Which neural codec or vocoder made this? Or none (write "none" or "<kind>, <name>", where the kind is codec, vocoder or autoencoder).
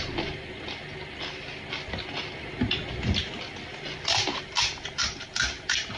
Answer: none